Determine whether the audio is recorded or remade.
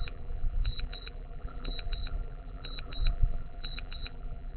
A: remade